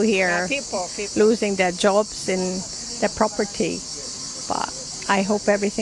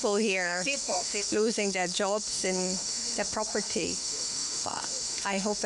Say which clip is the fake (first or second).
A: second